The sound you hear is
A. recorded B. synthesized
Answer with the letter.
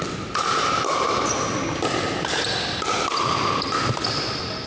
A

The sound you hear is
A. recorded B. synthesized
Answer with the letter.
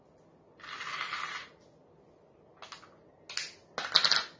A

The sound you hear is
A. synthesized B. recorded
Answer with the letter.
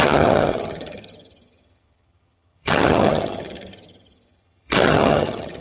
A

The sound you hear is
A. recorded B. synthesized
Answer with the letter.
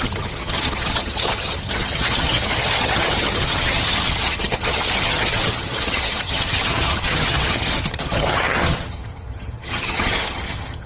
B